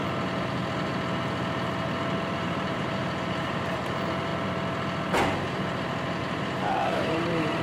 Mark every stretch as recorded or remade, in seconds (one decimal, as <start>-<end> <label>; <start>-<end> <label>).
0.0-2.3 recorded; 2.3-4.3 remade; 4.3-6.2 recorded; 6.2-7.6 remade